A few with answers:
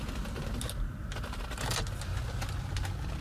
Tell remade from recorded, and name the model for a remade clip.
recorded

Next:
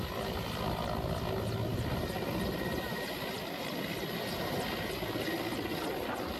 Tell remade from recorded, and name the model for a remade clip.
recorded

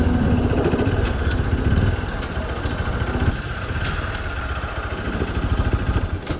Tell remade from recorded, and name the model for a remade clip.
recorded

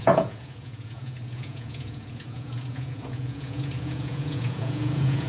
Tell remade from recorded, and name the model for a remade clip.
remade, vocoder, Vocos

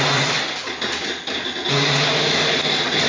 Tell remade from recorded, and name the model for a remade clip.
recorded